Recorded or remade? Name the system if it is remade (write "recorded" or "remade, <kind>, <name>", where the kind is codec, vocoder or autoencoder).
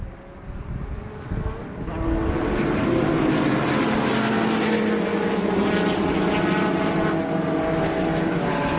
recorded